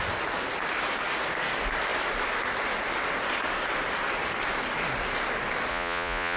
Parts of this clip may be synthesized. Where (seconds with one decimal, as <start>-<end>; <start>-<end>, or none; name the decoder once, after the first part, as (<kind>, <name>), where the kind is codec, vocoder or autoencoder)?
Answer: 5.7-6.4 (vocoder, Vocos)